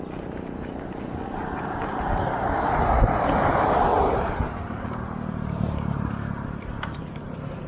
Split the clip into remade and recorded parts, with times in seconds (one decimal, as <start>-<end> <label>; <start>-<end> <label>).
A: 0.0-3.9 recorded; 3.9-7.0 remade; 7.0-7.7 recorded